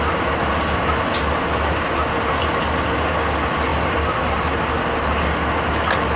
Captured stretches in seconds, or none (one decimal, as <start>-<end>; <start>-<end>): 0.0-6.2